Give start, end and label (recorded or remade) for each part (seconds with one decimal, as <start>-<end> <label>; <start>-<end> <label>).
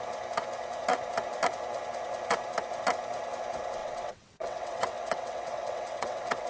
0.0-3.8 recorded; 3.8-6.5 remade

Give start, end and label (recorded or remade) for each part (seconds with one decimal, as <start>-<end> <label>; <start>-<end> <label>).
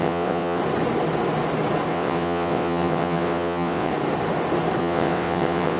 0.0-0.6 remade; 0.6-1.9 recorded; 1.9-3.9 remade; 3.9-4.8 recorded; 4.8-5.8 remade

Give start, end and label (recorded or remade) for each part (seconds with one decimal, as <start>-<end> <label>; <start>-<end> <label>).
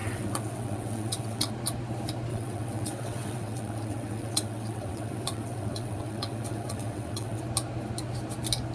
0.0-1.5 remade; 1.5-2.3 recorded; 2.3-7.4 remade; 7.4-8.7 recorded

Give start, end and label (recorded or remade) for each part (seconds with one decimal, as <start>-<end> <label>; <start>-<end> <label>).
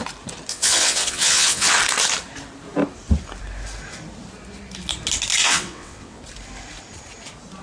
0.0-0.5 recorded; 0.5-1.8 remade; 1.8-5.4 recorded; 5.4-6.2 remade; 6.2-7.6 recorded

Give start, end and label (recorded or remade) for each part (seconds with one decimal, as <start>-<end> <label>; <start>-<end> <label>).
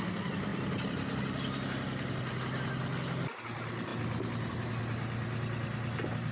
0.0-6.3 recorded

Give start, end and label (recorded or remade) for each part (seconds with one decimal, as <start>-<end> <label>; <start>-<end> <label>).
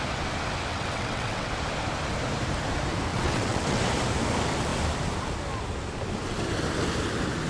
0.0-0.7 recorded; 0.7-1.5 remade; 1.5-3.1 recorded; 3.1-3.8 remade; 3.8-7.5 recorded